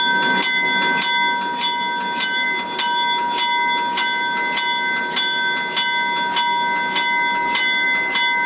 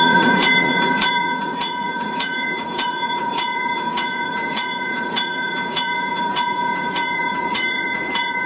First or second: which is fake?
second